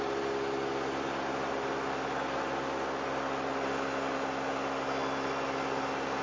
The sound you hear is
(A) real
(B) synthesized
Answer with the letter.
A